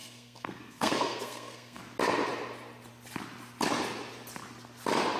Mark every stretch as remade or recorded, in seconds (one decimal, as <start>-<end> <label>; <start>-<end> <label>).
0.0-1.8 remade; 1.8-5.2 recorded